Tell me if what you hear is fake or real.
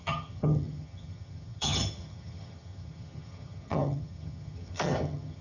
fake